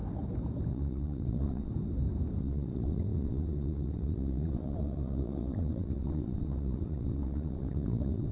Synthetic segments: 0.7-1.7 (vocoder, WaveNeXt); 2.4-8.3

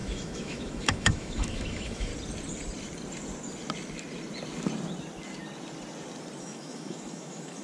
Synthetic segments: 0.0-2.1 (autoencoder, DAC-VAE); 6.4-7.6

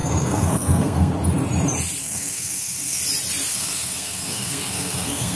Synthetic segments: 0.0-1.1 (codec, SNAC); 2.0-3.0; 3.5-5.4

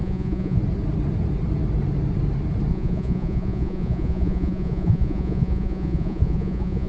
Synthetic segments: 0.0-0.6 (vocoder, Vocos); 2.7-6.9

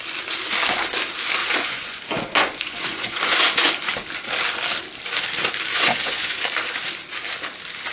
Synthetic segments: 1.4-3.7 (vocoder, Vocos); 5.7-6.4